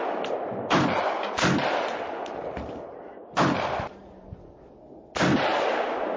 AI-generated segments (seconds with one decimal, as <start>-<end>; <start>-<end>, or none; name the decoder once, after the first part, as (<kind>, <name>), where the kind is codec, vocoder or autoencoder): none